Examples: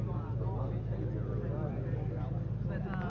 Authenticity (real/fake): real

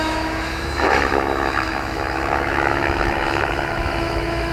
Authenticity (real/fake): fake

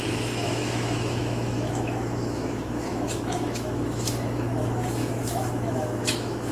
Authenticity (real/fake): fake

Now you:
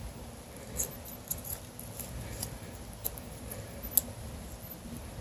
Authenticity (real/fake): real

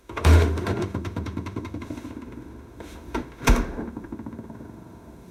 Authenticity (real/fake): fake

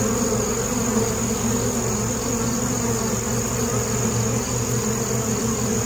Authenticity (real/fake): real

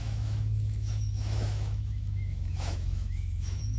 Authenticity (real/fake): fake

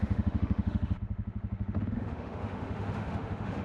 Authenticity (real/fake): fake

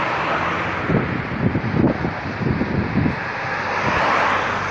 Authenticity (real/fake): real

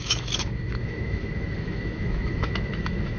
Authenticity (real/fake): fake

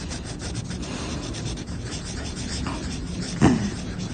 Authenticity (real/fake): real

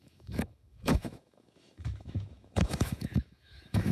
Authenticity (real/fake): fake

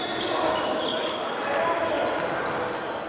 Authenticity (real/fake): real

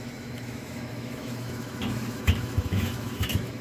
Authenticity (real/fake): fake